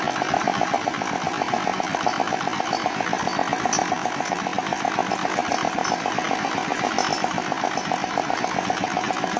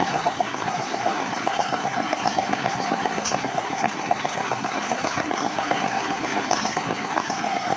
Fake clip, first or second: second